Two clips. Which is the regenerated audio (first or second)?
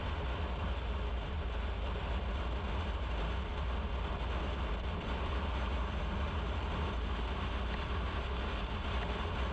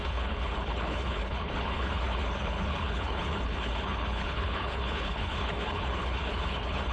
second